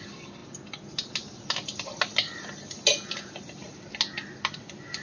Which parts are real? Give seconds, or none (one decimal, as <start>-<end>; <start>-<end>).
0.0-5.0